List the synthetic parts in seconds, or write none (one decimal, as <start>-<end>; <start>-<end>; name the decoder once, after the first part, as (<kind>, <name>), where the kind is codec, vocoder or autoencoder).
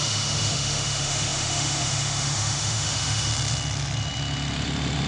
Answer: 0.0-3.3 (autoencoder, DAC-VAE)